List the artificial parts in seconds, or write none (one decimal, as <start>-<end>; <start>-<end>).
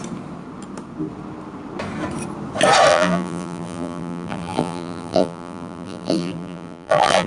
2.9-7.3